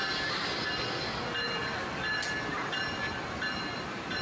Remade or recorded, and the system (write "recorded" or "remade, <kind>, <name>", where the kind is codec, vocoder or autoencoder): recorded